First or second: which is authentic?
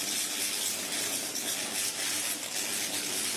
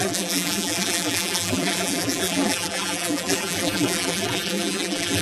first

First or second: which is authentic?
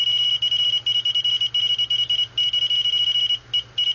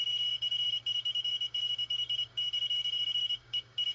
first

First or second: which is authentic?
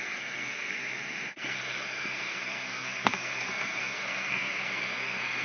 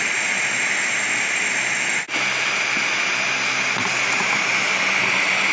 second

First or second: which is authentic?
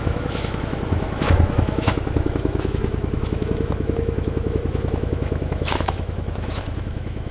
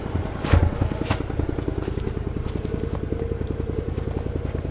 second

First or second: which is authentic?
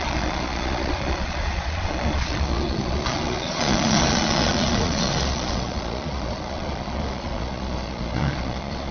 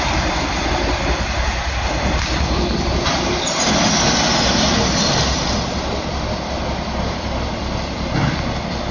second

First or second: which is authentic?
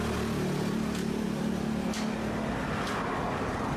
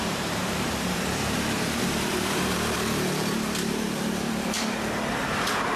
first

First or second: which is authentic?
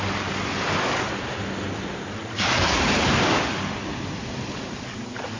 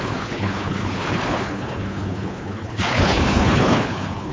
first